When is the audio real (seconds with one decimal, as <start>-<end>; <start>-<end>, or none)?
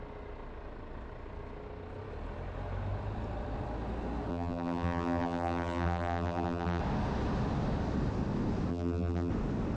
0.0-4.3; 6.8-8.7; 9.3-9.8